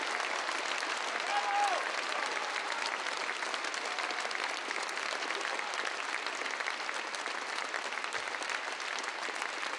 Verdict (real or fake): real